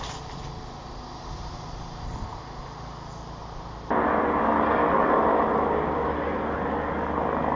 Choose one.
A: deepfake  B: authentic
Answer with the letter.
B